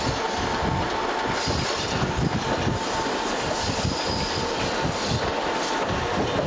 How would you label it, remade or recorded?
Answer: recorded